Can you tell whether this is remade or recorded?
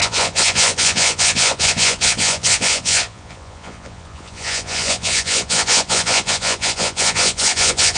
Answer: remade